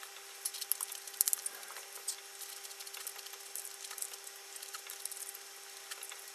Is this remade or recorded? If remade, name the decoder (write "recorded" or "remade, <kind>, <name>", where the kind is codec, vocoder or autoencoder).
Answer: recorded